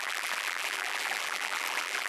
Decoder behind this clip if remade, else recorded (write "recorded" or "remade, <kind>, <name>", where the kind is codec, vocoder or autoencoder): remade, vocoder, BigVGAN v2